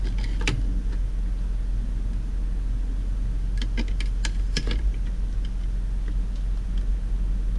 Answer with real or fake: real